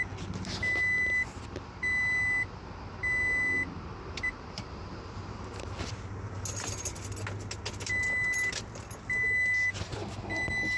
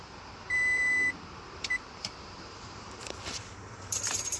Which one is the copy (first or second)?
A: second